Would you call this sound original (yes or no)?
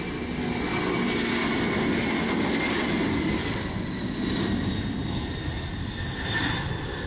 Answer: yes